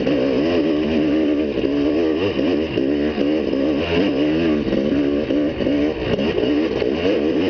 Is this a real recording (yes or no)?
yes